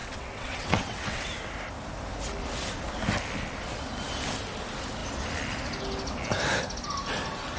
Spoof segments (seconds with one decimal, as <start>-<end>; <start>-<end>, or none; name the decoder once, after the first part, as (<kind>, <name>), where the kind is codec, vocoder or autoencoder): 0.0-1.3 (vocoder, WaveNeXt)